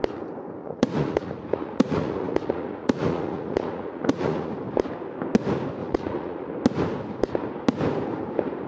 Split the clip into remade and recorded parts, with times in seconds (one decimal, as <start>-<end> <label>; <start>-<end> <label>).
0.0-0.6 recorded; 0.6-4.5 remade; 4.5-5.8 recorded; 5.8-6.5 remade; 6.5-8.7 recorded